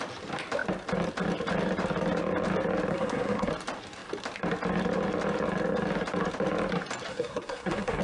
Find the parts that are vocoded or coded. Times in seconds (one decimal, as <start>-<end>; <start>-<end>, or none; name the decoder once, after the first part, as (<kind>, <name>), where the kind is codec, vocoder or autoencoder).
2.9-3.5 (codec, SNAC); 7.1-8.0